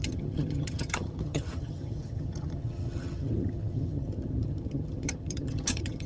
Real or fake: fake